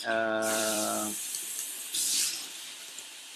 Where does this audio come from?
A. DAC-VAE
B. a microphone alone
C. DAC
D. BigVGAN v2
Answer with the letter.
D